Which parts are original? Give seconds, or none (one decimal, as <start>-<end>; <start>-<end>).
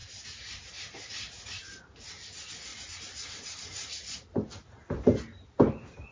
0.0-2.7; 4.5-6.1